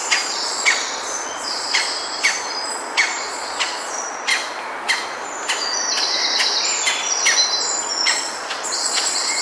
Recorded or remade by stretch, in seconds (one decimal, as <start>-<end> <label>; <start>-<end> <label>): 0.0-1.8 remade; 1.8-2.6 recorded; 2.6-4.3 remade; 4.3-7.8 recorded; 7.8-9.4 remade